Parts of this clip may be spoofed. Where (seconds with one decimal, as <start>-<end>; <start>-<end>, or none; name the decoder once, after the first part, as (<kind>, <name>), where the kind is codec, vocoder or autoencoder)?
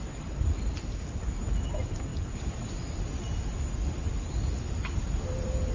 0.0-2.1 (vocoder, BigVGAN v2); 4.7-5.7